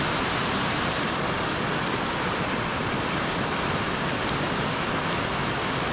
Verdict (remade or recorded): recorded